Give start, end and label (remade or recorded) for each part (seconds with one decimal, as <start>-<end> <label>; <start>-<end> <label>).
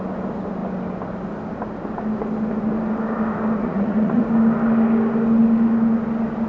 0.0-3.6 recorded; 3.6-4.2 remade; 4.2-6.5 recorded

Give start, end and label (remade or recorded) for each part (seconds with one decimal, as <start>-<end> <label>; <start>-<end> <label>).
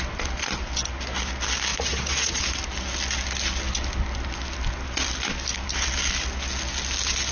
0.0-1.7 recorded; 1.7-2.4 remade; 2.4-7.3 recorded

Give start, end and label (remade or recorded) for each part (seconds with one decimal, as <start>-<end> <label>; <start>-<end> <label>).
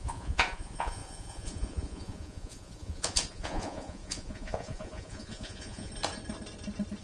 0.0-5.9 remade; 5.9-7.0 recorded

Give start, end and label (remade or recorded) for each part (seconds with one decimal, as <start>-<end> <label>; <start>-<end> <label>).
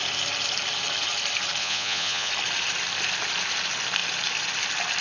0.0-1.6 recorded; 1.6-2.3 remade; 2.3-5.0 recorded